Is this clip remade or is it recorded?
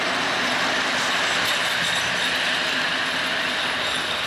recorded